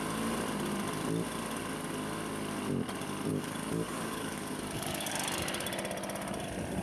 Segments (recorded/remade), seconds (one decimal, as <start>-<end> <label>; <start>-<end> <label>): 0.0-3.3 recorded; 3.3-5.1 remade; 5.1-6.8 recorded